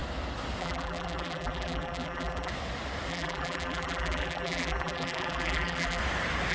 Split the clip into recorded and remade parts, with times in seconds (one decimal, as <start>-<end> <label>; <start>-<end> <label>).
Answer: 0.0-0.6 recorded; 0.6-2.5 remade; 2.5-3.1 recorded; 3.1-6.0 remade; 6.0-6.5 recorded